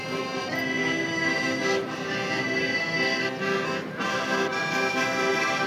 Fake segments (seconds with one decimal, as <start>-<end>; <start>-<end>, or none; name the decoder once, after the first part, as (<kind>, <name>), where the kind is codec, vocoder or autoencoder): 0.8-1.6 (autoencoder, DAC-VAE)